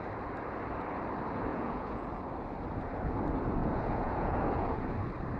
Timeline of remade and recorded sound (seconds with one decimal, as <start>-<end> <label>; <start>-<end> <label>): 0.0-1.5 recorded; 1.5-2.1 remade; 2.1-3.6 recorded; 3.6-4.7 remade; 4.7-5.4 recorded